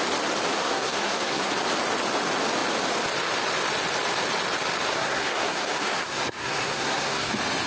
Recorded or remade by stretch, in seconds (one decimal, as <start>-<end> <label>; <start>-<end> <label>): 0.0-0.6 recorded; 0.6-1.5 remade; 1.5-4.9 recorded; 4.9-7.3 remade; 7.3-7.7 recorded